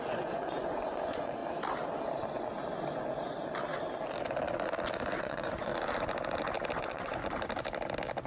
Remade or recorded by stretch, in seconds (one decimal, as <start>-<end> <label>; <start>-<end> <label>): 0.0-1.4 remade; 1.4-5.2 recorded; 5.2-5.7 remade; 5.7-6.8 recorded; 6.8-7.2 remade; 7.2-8.3 recorded